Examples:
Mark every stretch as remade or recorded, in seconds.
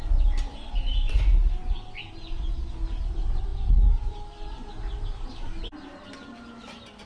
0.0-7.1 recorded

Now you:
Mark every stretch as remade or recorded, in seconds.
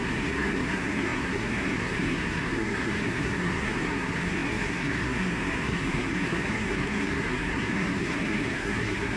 0.0-9.2 remade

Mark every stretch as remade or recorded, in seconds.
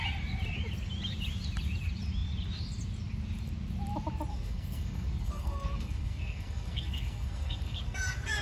0.0-4.3 recorded; 4.3-8.4 remade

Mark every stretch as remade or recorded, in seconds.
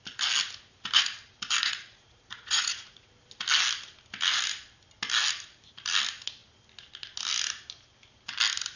0.0-1.6 recorded; 1.6-3.1 remade; 3.1-8.8 recorded